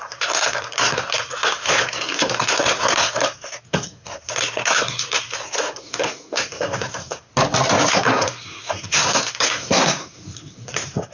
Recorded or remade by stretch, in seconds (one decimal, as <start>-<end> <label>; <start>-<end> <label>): 0.0-7.3 remade; 7.3-7.9 recorded; 7.9-11.1 remade